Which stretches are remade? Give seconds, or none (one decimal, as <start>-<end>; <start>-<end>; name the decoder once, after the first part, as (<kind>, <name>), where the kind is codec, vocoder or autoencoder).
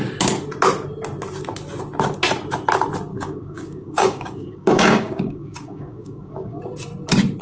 3.1-6.6 (codec, DAC)